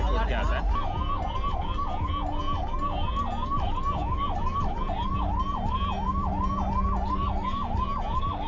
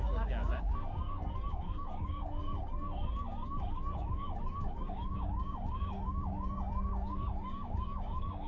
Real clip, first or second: first